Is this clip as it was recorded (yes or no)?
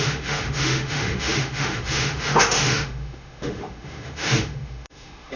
no